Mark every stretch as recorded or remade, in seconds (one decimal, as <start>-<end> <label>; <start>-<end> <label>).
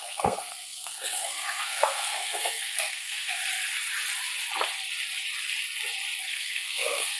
0.0-3.4 remade; 3.4-6.3 recorded; 6.3-7.2 remade